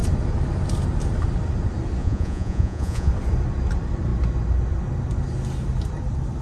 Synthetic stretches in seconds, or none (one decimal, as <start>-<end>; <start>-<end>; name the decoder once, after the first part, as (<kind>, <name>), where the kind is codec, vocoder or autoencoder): 2.0-3.1 (vocoder, Vocos)